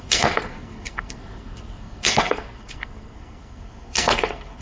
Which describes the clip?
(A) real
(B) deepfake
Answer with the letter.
B